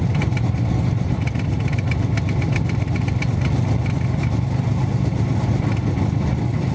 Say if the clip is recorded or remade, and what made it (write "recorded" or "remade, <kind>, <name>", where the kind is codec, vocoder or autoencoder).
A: recorded